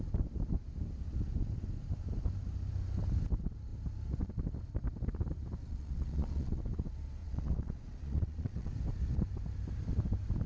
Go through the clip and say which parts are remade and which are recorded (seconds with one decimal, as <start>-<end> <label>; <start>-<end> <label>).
0.0-5.6 recorded; 5.6-6.6 remade; 6.6-7.2 recorded; 7.2-8.7 remade; 8.7-10.5 recorded